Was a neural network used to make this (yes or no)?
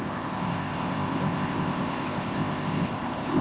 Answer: yes